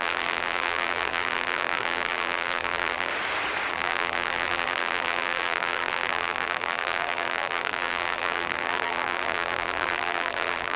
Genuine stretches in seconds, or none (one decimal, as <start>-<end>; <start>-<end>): 3.1-3.7